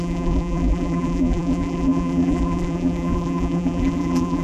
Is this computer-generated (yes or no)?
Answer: yes